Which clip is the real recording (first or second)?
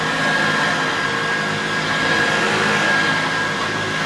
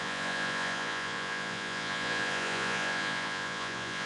first